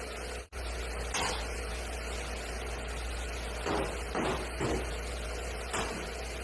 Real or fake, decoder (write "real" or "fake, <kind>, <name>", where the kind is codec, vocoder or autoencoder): real